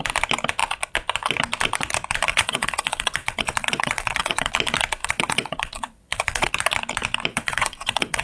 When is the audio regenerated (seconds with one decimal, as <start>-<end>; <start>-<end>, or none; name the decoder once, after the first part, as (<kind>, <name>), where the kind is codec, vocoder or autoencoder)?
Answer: 2.3-4.5 (vocoder, WaveNeXt); 5.0-6.5; 7.3-8.2